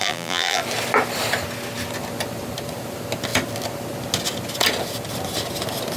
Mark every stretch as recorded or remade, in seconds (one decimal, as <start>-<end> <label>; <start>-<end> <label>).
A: 0.0-0.6 remade; 0.6-6.0 recorded